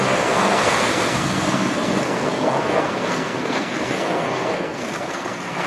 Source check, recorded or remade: remade